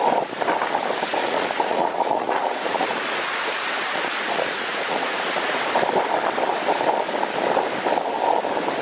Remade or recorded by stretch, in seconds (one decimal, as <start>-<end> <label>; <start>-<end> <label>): 0.0-1.2 recorded; 1.2-5.6 remade; 5.6-8.8 recorded